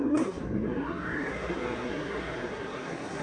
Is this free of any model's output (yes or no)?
no